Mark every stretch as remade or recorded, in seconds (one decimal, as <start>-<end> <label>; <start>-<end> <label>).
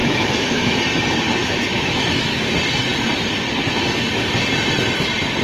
0.0-0.8 remade; 0.8-1.4 recorded; 1.4-2.5 remade; 2.5-5.4 recorded